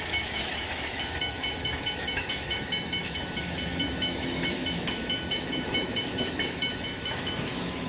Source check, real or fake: fake